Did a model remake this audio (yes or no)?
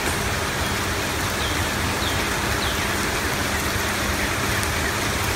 no